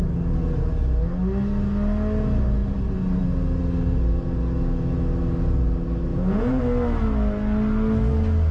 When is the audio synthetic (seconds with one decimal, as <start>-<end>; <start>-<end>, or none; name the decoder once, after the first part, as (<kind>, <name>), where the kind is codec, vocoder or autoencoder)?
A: 6.1-6.6 (vocoder, Vocos)